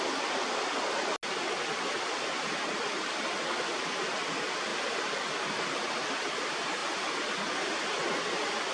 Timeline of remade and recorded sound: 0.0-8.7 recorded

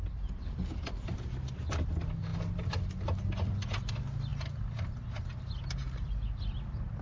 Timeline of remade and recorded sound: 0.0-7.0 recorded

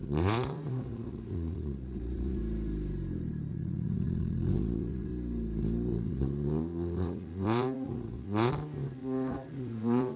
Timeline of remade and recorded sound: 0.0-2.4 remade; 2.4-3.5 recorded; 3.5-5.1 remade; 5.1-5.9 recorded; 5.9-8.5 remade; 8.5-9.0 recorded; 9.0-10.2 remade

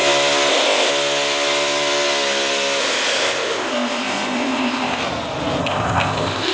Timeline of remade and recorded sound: 0.0-0.5 recorded; 0.5-0.9 remade; 0.9-2.8 recorded; 2.8-5.0 remade; 5.0-5.6 recorded; 5.6-6.5 remade

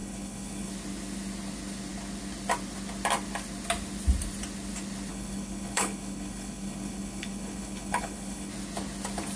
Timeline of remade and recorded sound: 0.0-0.7 remade; 0.7-5.1 recorded; 5.1-8.5 remade; 8.5-9.4 recorded

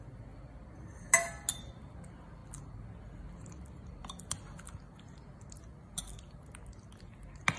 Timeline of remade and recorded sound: 0.0-7.6 recorded

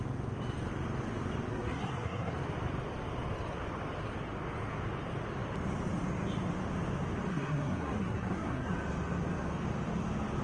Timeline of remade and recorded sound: 0.0-1.5 recorded; 1.5-2.3 remade; 2.3-7.3 recorded; 7.3-8.7 remade; 8.7-10.4 recorded

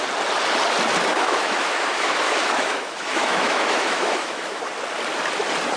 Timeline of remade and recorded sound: 0.0-1.1 recorded; 1.1-4.6 remade; 4.6-5.8 recorded